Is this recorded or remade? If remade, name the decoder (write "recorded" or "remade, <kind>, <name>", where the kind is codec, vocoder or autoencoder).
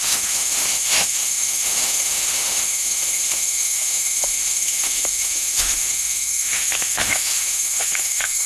remade, autoencoder, DAC-VAE